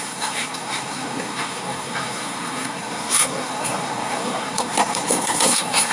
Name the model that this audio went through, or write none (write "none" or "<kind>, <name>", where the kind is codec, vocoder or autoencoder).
codec, SNAC